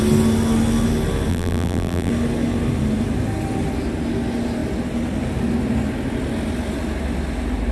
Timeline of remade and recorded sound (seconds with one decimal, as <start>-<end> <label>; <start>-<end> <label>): 0.0-1.3 recorded; 1.3-2.1 remade; 2.1-7.7 recorded